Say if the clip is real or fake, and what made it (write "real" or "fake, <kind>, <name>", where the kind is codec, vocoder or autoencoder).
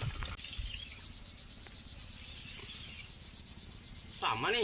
real